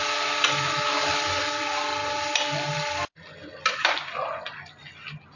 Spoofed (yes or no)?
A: no